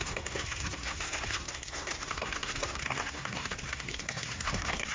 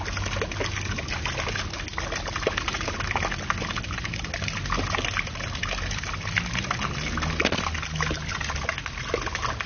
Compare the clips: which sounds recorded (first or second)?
second